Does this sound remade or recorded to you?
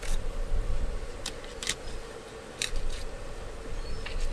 recorded